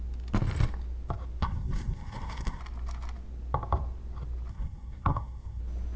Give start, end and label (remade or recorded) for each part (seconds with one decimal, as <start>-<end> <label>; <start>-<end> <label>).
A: 0.0-1.4 recorded; 1.4-2.6 remade; 2.6-4.5 recorded; 4.5-5.6 remade; 5.6-6.0 recorded